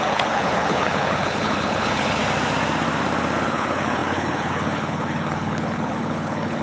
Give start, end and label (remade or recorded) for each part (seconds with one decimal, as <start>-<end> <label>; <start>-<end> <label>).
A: 0.0-2.2 remade; 2.2-3.5 recorded; 3.5-6.6 remade